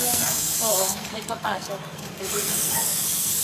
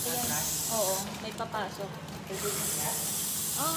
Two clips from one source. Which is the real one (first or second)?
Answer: second